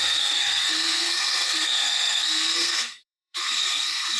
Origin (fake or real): fake